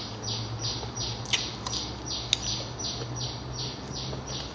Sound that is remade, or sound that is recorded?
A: recorded